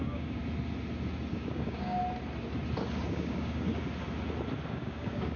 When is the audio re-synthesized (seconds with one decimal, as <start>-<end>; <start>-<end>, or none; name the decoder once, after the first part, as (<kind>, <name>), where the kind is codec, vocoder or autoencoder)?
0.0-0.4 (codec, DAC); 1.3-2.0; 3.1-3.7; 4.7-5.4